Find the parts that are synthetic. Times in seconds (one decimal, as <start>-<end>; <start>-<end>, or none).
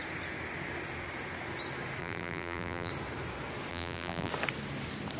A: 2.0-2.9; 3.7-4.3